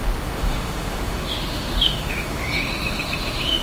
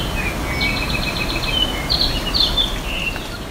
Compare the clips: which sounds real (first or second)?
second